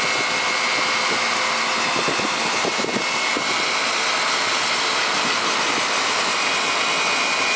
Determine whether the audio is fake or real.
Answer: real